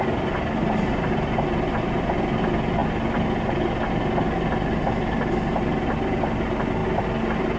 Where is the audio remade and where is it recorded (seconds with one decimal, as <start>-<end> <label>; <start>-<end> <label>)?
0.0-7.6 recorded